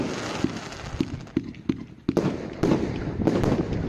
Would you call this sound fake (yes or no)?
no